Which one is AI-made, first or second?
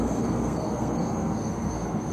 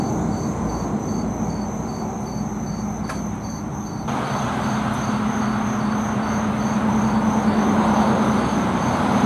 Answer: first